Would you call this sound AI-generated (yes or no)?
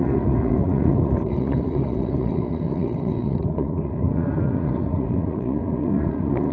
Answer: yes